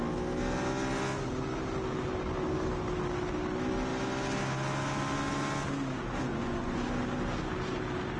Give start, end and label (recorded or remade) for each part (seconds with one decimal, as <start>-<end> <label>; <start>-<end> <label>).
0.0-6.3 recorded; 6.3-6.8 remade; 6.8-8.2 recorded